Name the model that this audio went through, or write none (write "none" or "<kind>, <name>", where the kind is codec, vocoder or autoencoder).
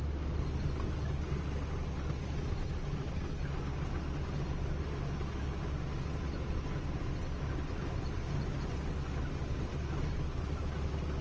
none